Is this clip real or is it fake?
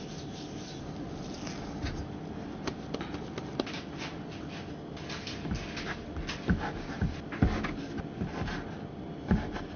real